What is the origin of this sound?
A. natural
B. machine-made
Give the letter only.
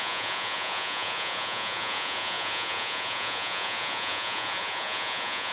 B